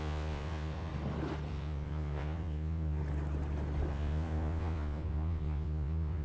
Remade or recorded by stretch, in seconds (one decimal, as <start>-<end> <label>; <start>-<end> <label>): 0.0-0.9 remade; 0.9-1.5 recorded; 1.5-3.0 remade; 3.0-3.9 recorded; 3.9-6.2 remade